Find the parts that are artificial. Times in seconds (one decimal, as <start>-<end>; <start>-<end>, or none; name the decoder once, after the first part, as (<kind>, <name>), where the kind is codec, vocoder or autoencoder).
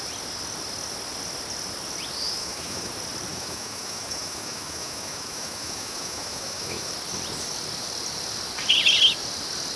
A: 2.4-2.9 (autoencoder, DAC-VAE); 3.3-6.9